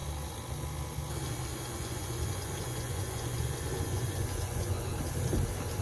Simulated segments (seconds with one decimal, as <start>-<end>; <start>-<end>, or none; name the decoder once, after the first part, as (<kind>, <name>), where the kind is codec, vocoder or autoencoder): 1.5-4.9 (vocoder, Vocos)